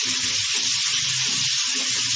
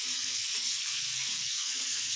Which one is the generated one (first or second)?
second